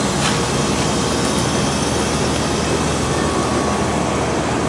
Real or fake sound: real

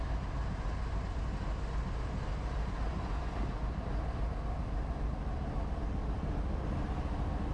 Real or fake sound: real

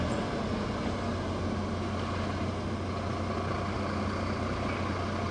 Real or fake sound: real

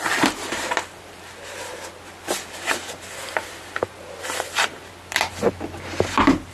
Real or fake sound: real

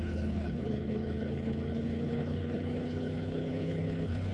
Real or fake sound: fake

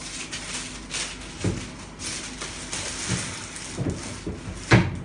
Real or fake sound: real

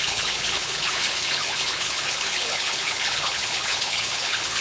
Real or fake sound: fake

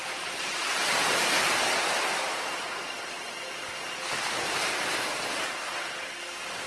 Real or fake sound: real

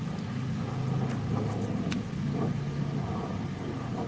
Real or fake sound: real